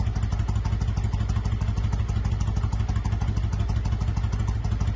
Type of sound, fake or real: real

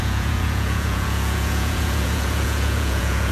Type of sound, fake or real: fake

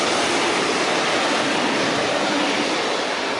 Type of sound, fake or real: real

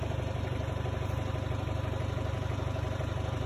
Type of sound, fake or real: real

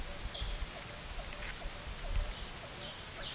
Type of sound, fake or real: real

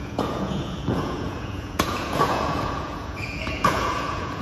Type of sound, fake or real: fake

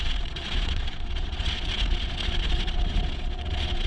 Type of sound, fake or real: fake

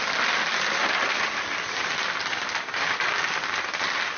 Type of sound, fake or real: real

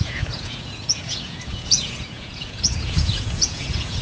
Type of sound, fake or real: fake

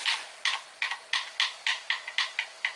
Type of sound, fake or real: real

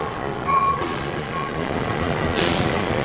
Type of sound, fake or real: fake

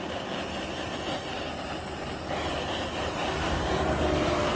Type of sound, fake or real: real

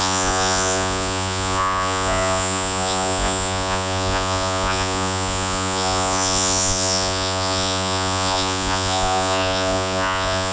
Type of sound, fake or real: fake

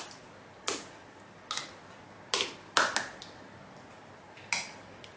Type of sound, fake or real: real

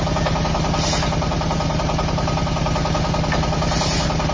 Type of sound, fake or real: real